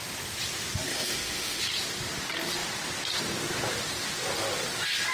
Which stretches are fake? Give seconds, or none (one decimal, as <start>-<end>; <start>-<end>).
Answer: 0.9-1.6